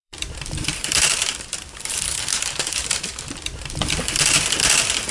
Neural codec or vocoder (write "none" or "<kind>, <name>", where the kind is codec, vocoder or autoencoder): vocoder, BigVGAN v2